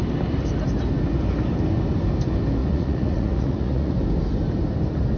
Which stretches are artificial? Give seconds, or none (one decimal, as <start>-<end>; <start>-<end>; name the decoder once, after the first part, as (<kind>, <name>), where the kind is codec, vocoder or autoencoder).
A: 2.6-3.9 (vocoder, Vocos)